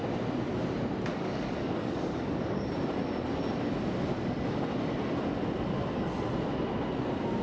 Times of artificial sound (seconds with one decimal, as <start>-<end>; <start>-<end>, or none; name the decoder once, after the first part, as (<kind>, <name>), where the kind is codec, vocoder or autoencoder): 1.1-2.7 (codec, DAC)